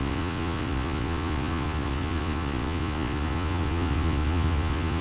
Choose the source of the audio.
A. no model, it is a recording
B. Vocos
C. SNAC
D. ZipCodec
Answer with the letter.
B